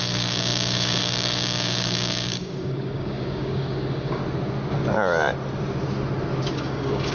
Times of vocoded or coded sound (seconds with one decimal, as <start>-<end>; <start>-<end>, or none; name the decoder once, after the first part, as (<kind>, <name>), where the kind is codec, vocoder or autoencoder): 0.0-4.2 (codec, DAC); 6.5-7.1